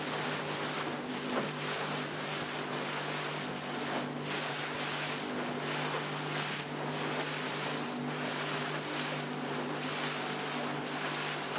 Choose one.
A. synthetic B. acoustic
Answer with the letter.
B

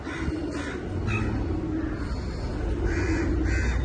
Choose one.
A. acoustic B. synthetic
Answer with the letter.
A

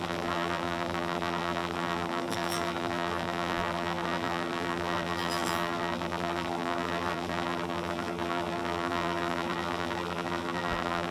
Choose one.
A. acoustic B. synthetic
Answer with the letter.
B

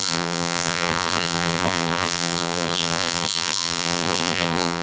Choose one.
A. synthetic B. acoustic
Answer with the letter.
A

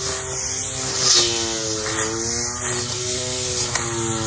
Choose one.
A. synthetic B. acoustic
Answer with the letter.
B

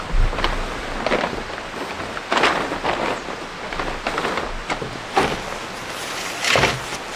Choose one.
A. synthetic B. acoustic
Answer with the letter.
B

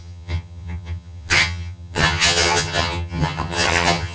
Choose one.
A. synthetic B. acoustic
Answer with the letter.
A